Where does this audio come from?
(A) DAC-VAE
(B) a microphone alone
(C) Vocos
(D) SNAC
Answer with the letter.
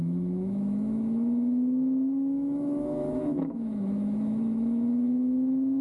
A